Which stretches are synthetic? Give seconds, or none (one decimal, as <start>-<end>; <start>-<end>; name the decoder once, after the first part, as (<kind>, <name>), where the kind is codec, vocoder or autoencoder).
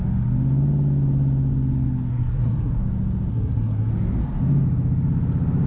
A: 2.1-2.8 (codec, SNAC); 3.3-3.9